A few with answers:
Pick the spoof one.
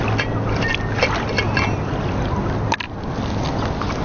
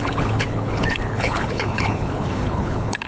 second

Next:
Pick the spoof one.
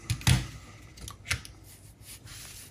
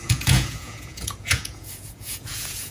second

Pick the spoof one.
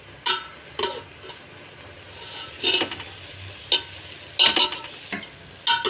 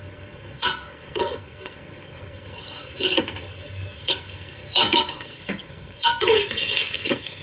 second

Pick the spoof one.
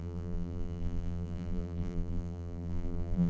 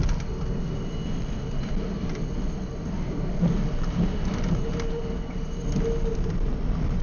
first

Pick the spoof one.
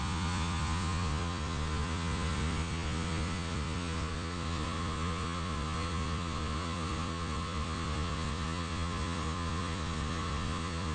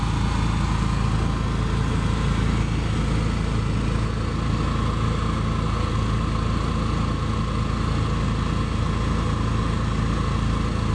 first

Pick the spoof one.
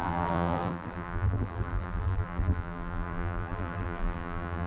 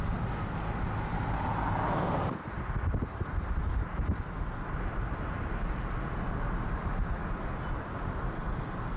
first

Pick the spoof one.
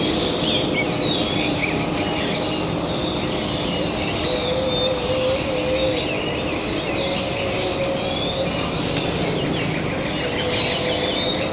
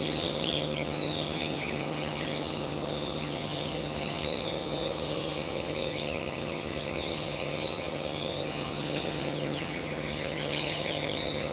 second